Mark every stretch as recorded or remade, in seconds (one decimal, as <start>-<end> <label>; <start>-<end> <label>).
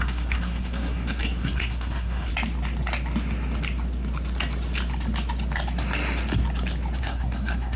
0.0-2.3 remade; 2.3-7.0 recorded; 7.0-7.8 remade